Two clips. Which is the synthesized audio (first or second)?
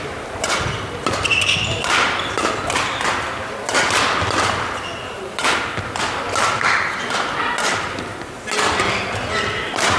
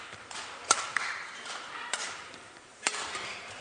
second